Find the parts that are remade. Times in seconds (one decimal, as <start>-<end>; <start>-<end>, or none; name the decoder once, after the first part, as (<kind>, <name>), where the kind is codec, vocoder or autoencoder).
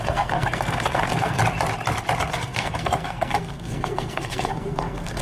0.0-1.4 (codec, SNAC); 2.3-5.2